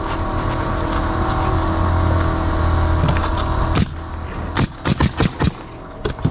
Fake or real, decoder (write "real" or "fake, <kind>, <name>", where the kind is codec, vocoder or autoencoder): real